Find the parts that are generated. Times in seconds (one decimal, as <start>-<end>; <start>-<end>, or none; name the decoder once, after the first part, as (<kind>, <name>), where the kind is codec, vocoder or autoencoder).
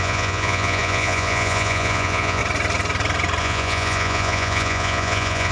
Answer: 0.0-2.4 (vocoder, Vocos); 3.4-5.5